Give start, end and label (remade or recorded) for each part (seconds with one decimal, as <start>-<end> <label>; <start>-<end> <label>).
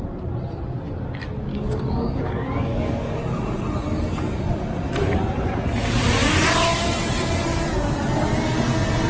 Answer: 0.0-1.5 recorded; 1.5-3.2 remade; 3.2-9.1 recorded